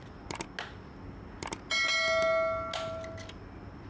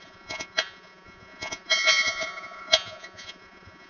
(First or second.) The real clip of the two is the first